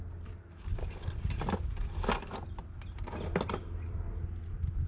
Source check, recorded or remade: recorded